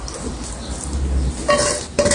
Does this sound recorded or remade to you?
recorded